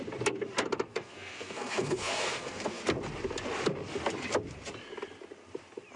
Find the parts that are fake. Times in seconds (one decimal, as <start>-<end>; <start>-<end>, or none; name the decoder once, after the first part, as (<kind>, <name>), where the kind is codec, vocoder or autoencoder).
0.9-2.8 (codec, SNAC)